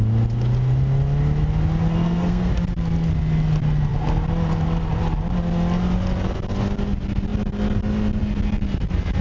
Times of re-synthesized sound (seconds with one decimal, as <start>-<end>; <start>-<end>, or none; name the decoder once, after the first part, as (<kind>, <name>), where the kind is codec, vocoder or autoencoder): 1.8-2.5 (codec, SNAC)